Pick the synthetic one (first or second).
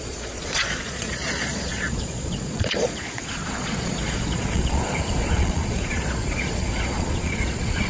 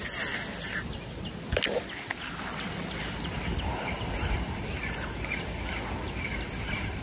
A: first